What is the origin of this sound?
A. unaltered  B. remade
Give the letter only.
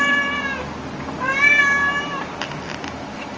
A